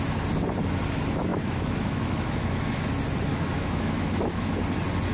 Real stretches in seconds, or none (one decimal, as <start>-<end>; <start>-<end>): 0.0-1.3; 2.9-3.3; 4.5-5.1